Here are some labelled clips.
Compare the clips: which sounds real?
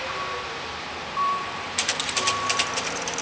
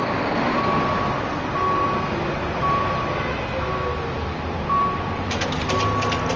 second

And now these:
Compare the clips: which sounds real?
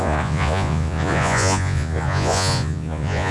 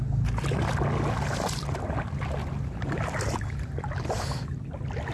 second